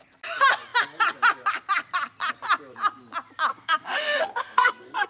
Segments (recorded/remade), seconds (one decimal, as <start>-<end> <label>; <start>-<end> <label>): 0.0-3.5 recorded; 3.5-5.1 remade